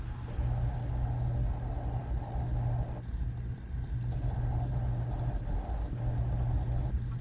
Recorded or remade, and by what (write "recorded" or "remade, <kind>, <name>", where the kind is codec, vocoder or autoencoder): recorded